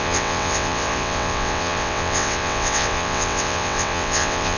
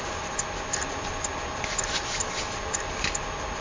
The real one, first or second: second